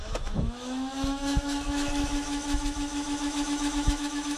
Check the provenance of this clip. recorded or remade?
remade